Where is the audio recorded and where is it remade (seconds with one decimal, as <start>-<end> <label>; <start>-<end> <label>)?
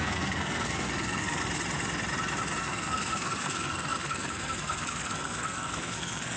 0.0-1.4 remade; 1.4-2.6 recorded; 2.6-6.4 remade